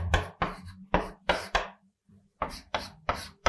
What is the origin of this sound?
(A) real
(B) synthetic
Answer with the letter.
B